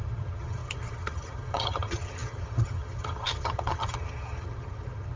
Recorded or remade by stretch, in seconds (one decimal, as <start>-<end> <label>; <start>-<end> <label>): 0.0-5.2 remade